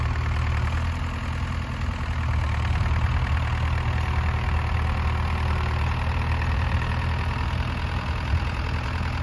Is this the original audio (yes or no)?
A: yes